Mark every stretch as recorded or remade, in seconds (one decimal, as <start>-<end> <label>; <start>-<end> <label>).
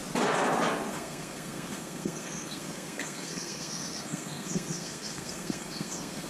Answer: 0.0-0.9 recorded; 0.9-6.3 remade